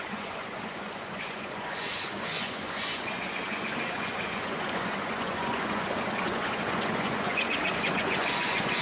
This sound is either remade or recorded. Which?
remade